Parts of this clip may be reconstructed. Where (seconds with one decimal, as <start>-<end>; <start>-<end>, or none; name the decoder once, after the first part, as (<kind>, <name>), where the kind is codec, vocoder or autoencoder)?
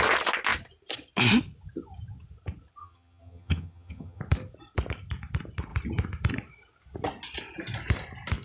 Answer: 2.8-4.2 (vocoder, HiFi-GAN)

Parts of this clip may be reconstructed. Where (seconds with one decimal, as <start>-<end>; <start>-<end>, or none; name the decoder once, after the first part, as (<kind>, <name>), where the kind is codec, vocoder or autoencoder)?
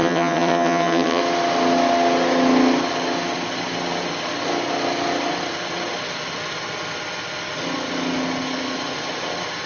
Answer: 0.0-1.2 (vocoder, HiFi-GAN)